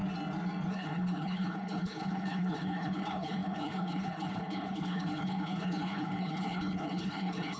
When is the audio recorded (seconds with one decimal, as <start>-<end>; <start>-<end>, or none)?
0.0-0.7